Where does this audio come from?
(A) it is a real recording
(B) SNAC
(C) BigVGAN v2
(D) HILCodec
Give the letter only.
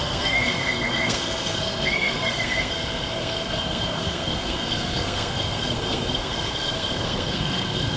B